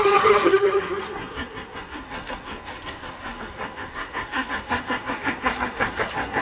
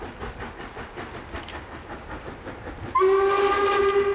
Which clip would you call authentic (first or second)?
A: second